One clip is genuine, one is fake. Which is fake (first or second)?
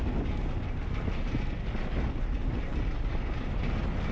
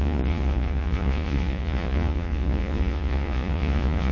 second